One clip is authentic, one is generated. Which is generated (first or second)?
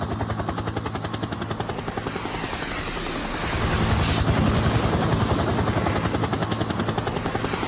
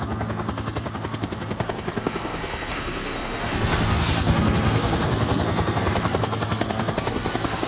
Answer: second